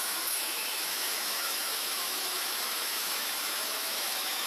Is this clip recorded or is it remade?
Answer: remade